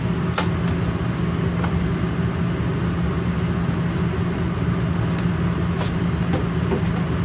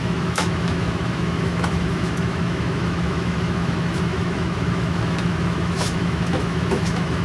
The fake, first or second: second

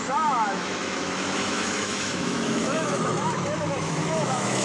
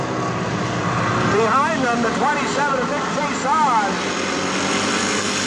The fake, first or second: first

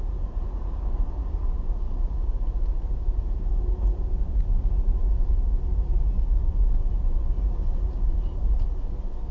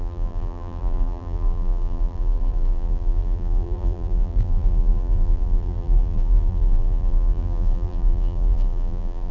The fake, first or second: second